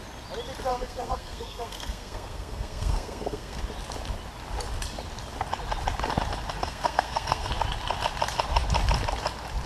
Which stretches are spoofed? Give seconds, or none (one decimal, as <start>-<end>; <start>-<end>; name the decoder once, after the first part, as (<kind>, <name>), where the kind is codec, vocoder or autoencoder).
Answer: 0.7-3.6 (codec, SNAC); 6.6-7.5